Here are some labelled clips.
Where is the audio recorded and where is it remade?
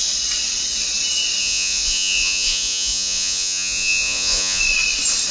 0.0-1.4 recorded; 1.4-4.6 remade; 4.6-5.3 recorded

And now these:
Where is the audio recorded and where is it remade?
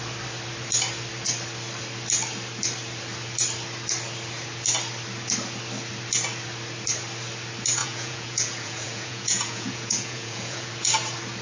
0.0-7.8 recorded; 7.8-10.7 remade; 10.7-11.4 recorded